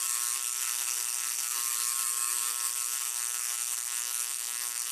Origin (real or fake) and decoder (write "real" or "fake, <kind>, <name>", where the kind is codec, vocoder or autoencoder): fake, codec, SNAC